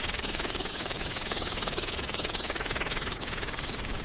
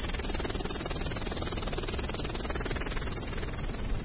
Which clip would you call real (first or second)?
second